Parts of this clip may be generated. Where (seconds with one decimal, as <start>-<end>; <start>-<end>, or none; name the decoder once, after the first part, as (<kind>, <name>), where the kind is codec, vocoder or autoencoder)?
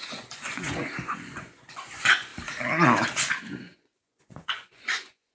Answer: 0.0-2.3 (vocoder, Vocos); 3.6-5.3